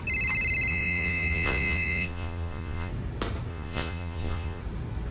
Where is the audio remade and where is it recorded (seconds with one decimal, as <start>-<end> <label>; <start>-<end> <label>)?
0.0-0.7 recorded; 0.7-2.9 remade; 2.9-3.5 recorded; 3.5-4.6 remade; 4.6-5.1 recorded